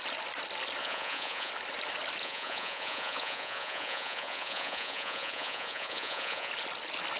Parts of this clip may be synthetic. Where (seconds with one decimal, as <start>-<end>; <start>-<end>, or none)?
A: 0.8-1.5; 2.2-6.5